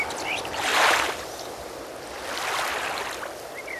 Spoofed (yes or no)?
no